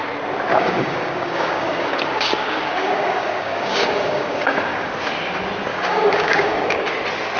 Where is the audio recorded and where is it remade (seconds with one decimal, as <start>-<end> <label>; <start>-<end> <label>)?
0.0-0.5 recorded; 0.5-4.9 remade; 4.9-5.7 recorded; 5.7-6.9 remade; 6.9-7.4 recorded